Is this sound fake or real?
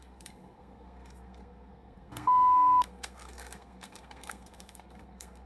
fake